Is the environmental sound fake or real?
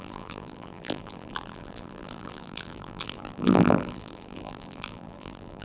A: fake